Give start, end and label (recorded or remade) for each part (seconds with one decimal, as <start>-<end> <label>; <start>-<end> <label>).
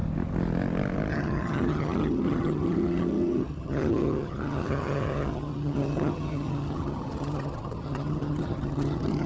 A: 0.0-1.1 recorded; 1.1-9.3 remade